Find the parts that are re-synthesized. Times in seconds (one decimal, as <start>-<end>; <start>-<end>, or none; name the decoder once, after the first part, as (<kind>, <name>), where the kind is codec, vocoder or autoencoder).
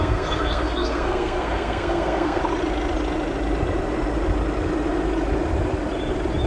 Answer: 0.0-2.4 (codec, SNAC)